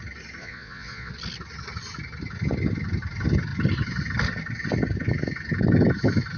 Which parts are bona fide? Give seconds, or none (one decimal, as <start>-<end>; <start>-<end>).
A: 0.0-0.4; 1.1-6.4